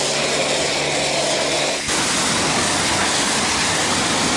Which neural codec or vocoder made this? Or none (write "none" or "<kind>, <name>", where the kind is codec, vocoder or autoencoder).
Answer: none